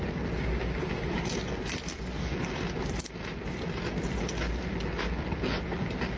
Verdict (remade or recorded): recorded